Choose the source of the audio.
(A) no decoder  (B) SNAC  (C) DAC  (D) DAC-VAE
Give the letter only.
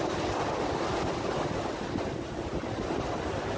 A